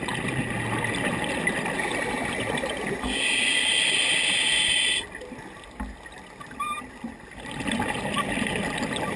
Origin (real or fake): real